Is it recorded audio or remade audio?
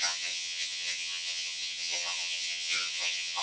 remade